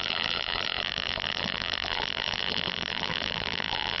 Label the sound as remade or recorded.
remade